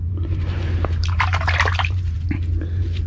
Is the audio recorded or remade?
remade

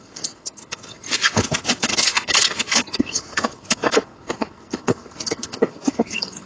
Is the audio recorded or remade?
remade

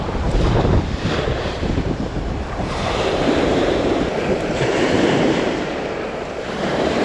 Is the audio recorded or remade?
remade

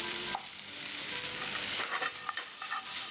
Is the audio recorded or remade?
remade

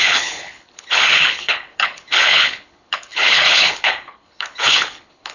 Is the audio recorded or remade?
remade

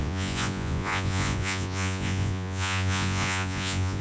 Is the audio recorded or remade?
remade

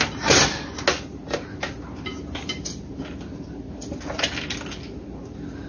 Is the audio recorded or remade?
recorded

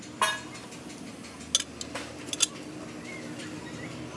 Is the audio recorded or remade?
recorded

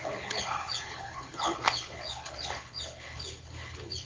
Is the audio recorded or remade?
remade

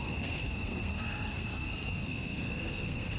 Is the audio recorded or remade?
remade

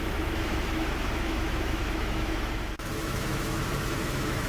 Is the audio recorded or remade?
remade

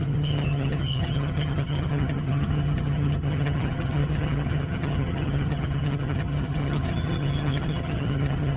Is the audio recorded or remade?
remade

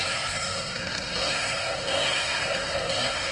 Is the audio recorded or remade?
remade